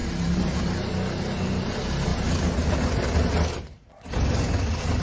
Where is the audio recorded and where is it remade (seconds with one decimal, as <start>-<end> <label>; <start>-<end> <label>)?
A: 0.0-0.6 remade; 0.6-5.0 recorded